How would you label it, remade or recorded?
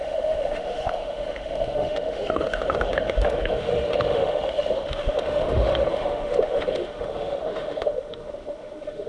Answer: remade